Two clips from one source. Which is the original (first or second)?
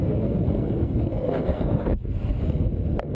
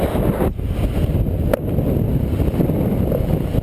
second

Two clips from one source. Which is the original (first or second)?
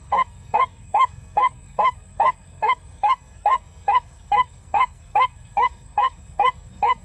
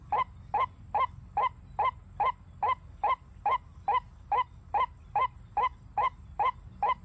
second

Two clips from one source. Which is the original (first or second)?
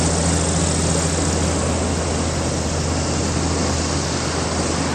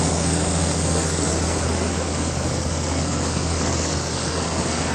first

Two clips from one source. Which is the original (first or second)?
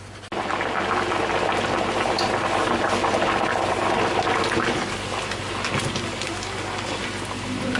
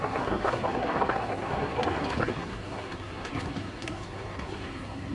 first